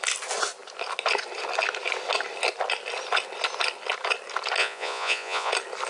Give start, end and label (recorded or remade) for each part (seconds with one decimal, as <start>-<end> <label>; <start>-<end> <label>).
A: 0.0-4.6 recorded; 4.6-5.5 remade; 5.5-5.9 recorded